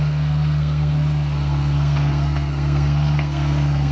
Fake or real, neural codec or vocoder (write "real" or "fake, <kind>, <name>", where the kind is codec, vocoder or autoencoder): fake, codec, SNAC